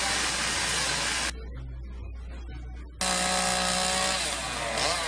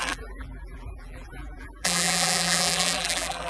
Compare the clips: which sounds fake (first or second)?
second